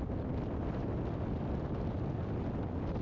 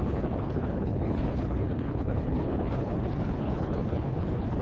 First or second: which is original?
first